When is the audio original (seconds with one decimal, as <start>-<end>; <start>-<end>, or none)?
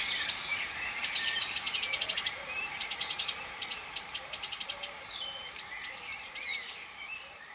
none